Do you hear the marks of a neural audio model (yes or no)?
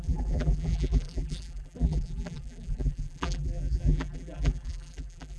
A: yes